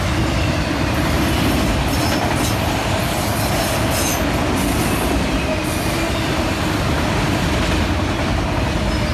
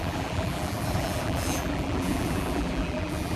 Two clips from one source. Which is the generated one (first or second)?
second